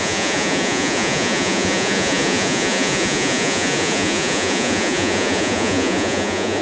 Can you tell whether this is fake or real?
fake